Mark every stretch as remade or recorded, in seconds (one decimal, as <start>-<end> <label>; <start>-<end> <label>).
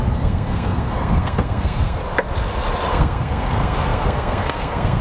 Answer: 0.0-2.0 remade; 2.0-2.9 recorded; 2.9-5.0 remade